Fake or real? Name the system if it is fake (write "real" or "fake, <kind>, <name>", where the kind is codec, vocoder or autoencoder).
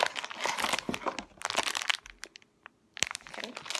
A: real